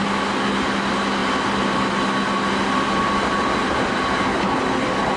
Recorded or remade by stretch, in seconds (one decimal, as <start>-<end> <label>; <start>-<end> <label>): 0.0-5.2 recorded